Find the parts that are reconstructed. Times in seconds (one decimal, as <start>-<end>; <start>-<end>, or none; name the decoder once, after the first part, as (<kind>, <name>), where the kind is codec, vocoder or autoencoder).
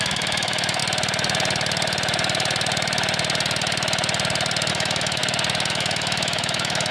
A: 0.0-0.8 (autoencoder, DAC-VAE); 4.7-5.2; 5.7-6.9